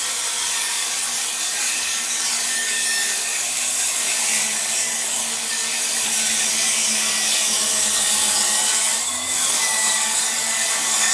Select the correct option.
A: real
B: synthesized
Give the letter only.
B